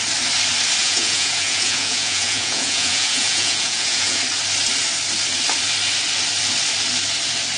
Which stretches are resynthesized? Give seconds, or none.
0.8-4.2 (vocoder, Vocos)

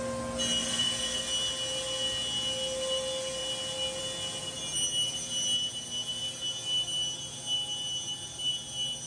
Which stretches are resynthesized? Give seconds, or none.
0.6-1.2 (vocoder, Vocos)